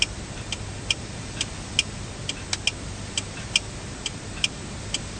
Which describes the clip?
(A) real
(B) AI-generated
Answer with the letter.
A